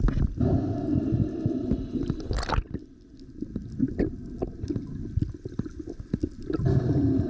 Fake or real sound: real